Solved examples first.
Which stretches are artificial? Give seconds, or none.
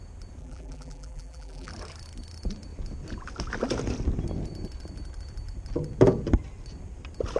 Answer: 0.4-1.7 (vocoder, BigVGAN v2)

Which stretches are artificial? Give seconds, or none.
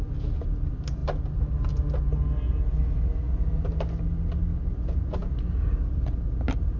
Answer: none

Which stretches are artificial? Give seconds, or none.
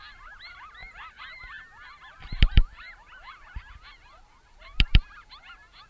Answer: 0.8-3.3 (vocoder, BigVGAN v2)